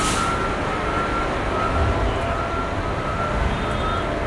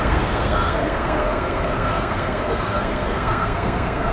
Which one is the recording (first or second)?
first